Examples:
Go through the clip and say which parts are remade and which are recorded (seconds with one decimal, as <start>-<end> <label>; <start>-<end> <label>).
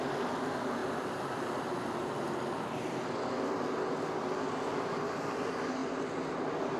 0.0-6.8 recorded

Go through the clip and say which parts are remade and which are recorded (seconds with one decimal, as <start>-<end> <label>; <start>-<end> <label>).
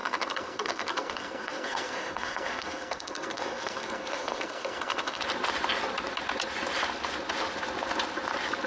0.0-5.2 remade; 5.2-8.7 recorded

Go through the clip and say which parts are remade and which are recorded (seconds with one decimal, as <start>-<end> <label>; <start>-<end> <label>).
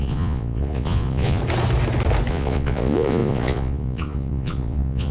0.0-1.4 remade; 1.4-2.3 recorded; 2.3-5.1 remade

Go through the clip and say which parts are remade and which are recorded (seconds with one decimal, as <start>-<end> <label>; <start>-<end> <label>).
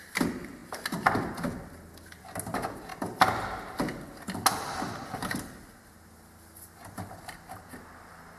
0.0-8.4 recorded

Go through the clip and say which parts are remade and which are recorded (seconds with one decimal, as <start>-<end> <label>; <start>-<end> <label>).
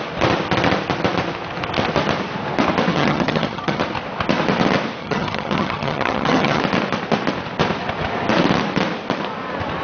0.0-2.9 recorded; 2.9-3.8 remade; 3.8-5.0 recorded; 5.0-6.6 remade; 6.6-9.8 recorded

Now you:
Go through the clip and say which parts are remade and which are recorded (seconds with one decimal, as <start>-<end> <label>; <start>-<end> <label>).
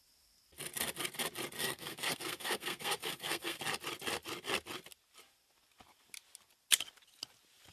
0.0-1.6 recorded; 1.6-3.6 remade; 3.6-7.7 recorded